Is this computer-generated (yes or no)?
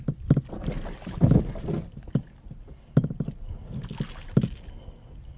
no